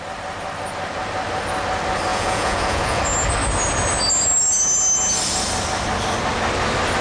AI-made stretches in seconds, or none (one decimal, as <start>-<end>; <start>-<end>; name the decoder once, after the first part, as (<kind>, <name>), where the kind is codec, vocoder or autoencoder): 2.1-3.0 (vocoder, Vocos)